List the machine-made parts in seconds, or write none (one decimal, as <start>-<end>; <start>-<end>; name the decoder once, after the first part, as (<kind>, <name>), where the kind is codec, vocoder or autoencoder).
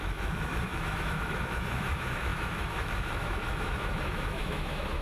0.0-5.0 (autoencoder, DAC-VAE)